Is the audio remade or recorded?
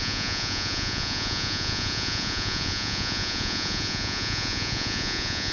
remade